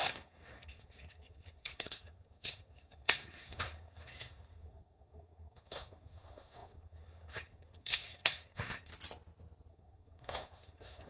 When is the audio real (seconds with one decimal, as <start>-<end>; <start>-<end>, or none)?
8.9-9.7